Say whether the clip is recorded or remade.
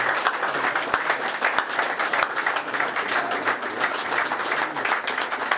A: recorded